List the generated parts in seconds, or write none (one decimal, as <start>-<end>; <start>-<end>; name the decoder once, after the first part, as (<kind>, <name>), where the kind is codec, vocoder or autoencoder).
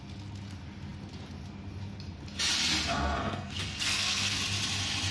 2.9-4.4 (codec, SNAC)